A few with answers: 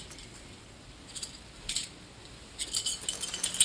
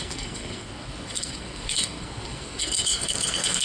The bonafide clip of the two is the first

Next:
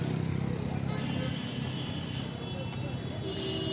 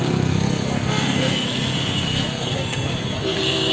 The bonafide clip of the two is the first